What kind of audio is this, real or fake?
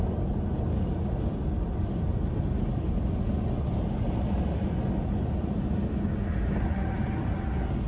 real